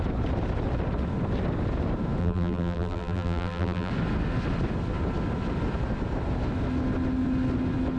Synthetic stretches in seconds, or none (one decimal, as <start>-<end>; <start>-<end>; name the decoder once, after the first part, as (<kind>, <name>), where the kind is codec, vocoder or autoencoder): 2.2-3.9 (vocoder, BigVGAN v2)